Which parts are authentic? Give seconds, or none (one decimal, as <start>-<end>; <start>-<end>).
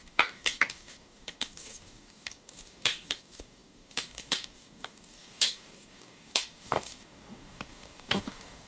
none